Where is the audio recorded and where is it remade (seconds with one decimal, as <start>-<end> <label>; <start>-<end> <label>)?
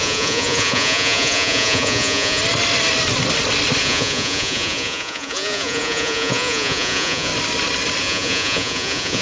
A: 0.0-2.4 remade; 2.4-3.8 recorded; 3.8-7.3 remade; 7.3-8.0 recorded; 8.0-9.2 remade